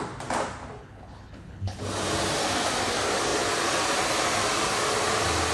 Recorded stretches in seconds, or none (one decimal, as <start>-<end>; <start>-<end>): 0.0-0.8; 1.8-5.5